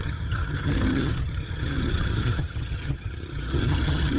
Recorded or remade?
remade